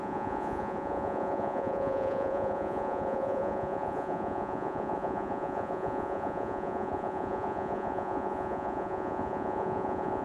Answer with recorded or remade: remade